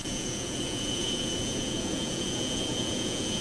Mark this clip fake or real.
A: fake